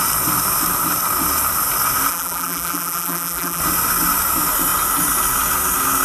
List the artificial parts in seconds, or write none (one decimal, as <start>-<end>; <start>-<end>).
2.1-3.6